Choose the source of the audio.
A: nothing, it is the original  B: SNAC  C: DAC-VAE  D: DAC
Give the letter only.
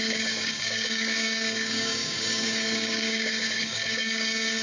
D